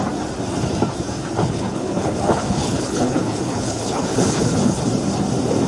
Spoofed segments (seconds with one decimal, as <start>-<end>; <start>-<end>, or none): 1.4-4.8